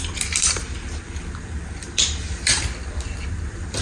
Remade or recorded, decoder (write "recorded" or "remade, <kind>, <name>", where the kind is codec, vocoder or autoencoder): remade, vocoder, BigVGAN v2